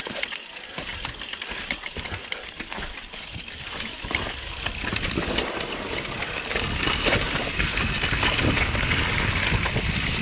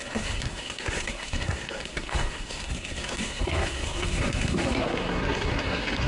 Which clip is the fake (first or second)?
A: second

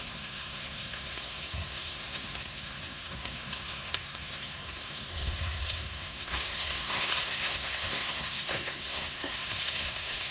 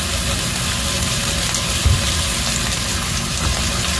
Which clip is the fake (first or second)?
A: first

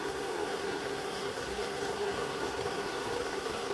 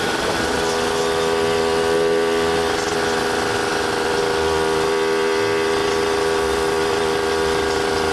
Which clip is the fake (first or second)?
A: first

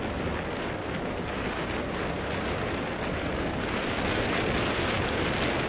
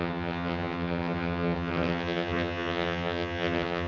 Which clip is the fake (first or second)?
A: second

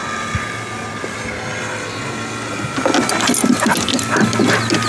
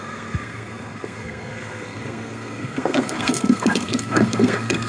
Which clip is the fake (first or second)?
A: second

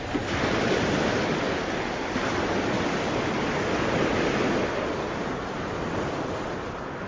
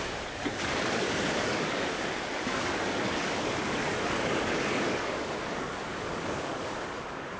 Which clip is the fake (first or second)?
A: second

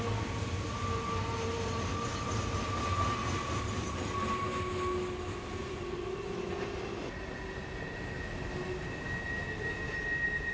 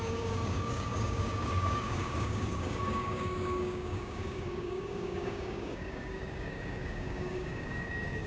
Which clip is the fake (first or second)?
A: second